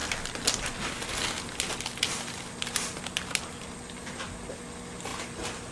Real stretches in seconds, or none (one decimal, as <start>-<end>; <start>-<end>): 0.0-5.7